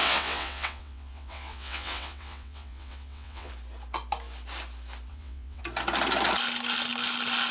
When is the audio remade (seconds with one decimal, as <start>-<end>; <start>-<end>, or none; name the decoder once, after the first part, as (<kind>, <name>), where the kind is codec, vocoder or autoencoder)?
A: 0.0-3.5 (vocoder, WaveNeXt); 5.1-5.6